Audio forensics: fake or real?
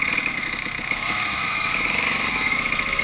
fake